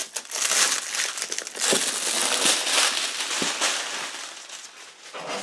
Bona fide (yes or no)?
yes